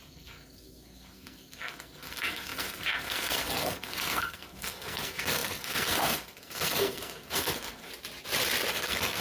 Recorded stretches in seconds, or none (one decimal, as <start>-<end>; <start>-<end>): 7.9-8.7